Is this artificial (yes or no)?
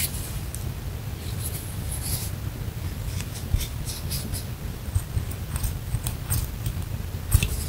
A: no